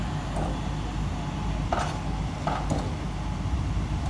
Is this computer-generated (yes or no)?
no